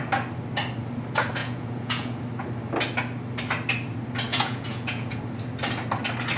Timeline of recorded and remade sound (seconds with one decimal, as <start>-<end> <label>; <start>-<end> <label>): 0.0-1.4 recorded; 1.4-2.2 remade; 2.2-4.3 recorded; 4.3-5.2 remade; 5.2-6.4 recorded